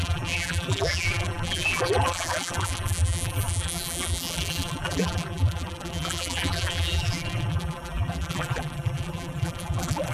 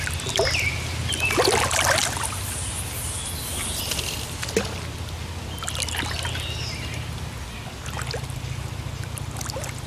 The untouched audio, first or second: second